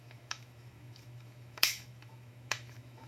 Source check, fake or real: fake